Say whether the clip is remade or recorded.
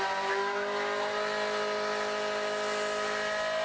recorded